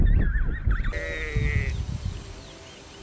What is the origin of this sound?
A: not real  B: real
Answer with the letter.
B